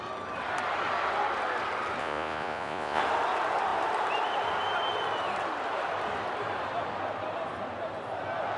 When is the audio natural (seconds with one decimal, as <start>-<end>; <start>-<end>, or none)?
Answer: 0.0-2.0; 3.0-8.6